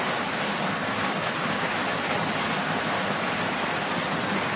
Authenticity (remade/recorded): recorded